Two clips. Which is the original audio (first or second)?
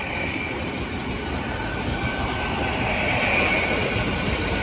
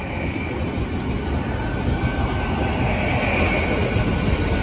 second